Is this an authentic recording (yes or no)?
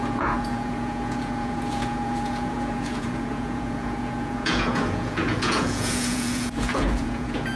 no